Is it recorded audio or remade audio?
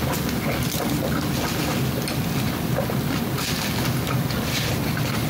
recorded